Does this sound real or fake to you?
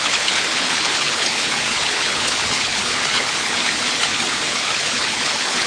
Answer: fake